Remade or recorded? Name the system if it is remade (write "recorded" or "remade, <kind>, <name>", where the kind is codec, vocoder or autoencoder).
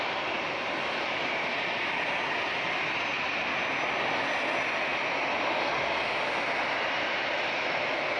recorded